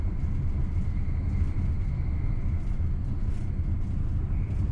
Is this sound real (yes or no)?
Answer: yes